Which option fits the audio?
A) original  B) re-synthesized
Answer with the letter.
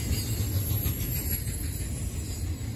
A